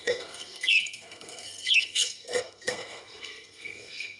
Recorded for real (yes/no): no